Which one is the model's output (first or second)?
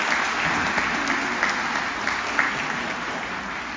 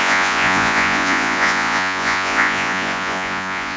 second